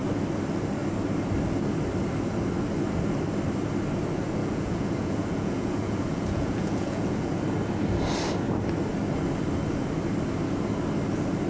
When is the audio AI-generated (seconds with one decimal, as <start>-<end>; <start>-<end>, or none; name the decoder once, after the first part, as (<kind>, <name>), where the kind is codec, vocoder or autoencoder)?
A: 4.4-7.4 (vocoder, Vocos)